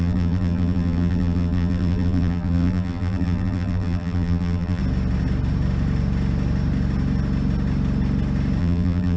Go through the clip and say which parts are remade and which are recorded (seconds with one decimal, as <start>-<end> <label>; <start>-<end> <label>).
0.0-4.8 remade; 4.8-8.6 recorded; 8.6-9.2 remade